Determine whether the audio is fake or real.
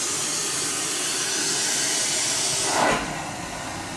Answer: real